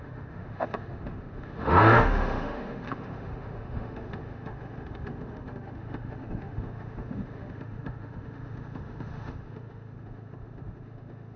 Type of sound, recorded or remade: remade